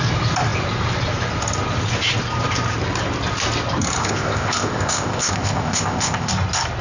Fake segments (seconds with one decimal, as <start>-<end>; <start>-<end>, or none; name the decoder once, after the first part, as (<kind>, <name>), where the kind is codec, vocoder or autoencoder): 4.0-6.3 (codec, ZipCodec)

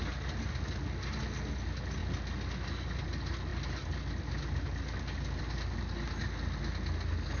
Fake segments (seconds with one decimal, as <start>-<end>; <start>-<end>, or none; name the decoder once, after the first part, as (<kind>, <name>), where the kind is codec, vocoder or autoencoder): none

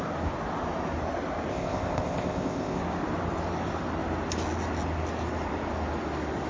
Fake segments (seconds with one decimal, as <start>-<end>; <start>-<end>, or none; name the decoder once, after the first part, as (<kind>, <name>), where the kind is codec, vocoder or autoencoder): 1.5-2.8 (codec, ZipCodec)